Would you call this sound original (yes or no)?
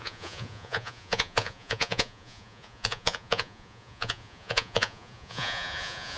no